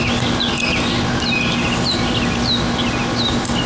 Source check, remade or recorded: recorded